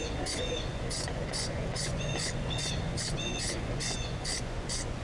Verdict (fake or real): fake